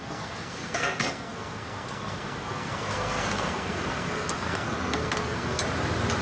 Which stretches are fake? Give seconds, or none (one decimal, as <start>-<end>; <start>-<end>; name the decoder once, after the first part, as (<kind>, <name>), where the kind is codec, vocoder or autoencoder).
0.0-5.6 (codec, SNAC)